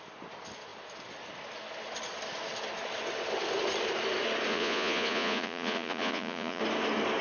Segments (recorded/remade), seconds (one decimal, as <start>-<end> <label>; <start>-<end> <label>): 0.0-4.5 recorded; 4.5-6.6 remade; 6.6-7.2 recorded